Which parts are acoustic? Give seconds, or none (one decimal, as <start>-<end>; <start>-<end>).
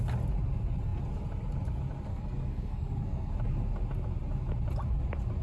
0.0-2.1; 3.3-5.4